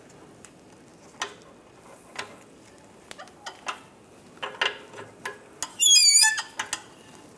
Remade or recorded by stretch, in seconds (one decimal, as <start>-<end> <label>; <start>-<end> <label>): 0.0-5.7 recorded; 5.7-6.3 remade; 6.3-7.4 recorded